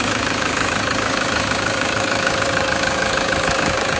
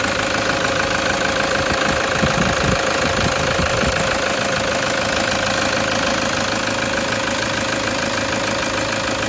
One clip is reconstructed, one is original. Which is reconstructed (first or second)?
first